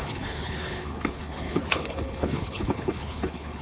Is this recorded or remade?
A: remade